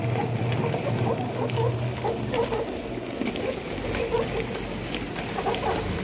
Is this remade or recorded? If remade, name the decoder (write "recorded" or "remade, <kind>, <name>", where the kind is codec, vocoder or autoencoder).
recorded